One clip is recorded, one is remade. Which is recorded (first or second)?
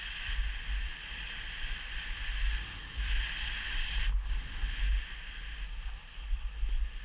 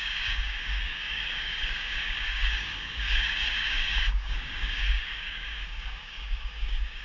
first